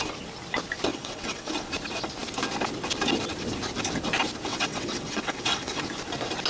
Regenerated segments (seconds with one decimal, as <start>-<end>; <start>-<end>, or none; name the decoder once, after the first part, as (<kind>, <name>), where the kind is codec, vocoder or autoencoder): 0.9-1.5 (vocoder, WaveNeXt); 4.5-5.8